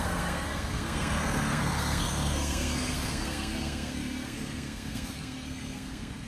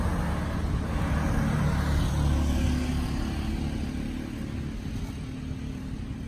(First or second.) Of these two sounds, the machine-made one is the first